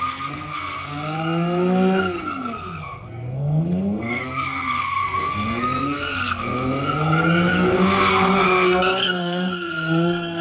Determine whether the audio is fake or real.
fake